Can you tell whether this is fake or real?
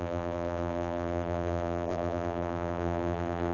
fake